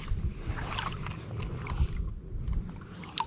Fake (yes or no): no